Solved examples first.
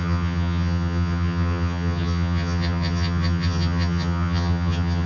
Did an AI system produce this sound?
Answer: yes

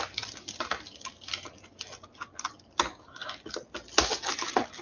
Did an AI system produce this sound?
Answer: no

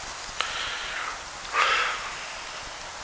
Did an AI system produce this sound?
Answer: no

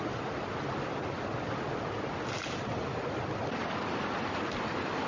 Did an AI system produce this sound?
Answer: no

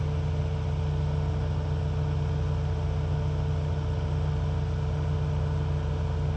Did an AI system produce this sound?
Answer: no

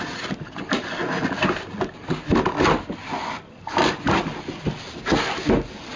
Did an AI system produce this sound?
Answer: no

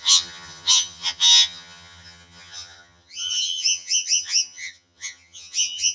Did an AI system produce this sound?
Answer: yes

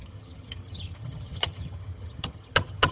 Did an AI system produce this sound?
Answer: yes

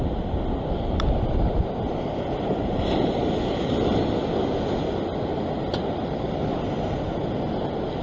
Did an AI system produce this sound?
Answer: no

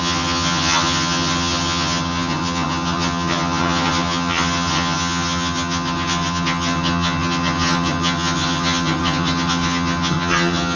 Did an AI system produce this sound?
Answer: yes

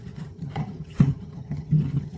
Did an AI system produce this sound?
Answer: yes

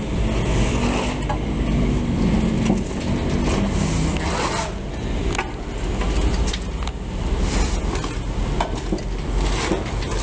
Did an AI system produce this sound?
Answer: no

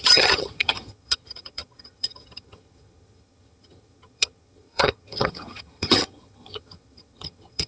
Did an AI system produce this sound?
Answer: yes